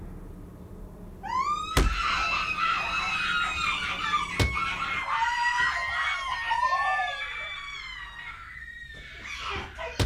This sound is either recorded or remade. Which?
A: recorded